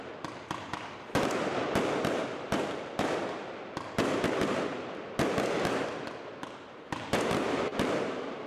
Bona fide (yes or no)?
yes